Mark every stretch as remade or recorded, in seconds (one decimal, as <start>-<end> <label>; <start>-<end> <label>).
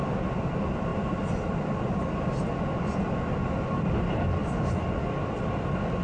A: 0.0-6.0 recorded